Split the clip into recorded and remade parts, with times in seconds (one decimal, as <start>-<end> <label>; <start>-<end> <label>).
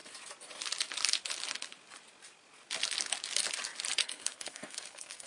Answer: 0.0-4.0 recorded; 4.0-5.3 remade